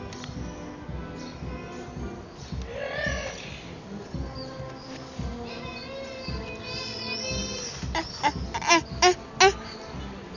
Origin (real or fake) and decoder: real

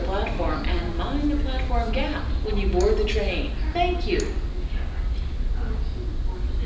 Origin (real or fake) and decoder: real